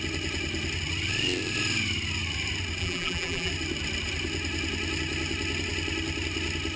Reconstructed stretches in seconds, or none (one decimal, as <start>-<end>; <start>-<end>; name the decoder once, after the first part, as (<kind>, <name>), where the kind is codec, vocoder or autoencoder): 2.8-3.5 (vocoder, BigVGAN v2)